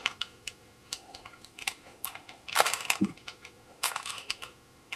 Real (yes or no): no